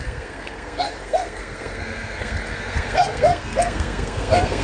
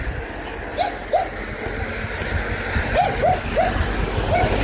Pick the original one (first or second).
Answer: second